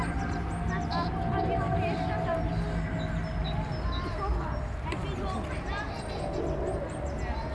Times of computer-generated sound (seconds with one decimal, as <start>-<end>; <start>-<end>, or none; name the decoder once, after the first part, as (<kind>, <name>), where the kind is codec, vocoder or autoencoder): 4.3-6.2 (vocoder, BigVGAN v2)